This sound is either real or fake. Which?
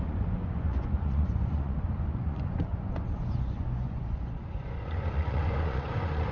fake